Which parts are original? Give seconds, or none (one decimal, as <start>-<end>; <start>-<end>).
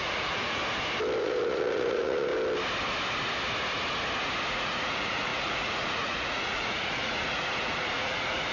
0.6-1.2; 2.3-4.5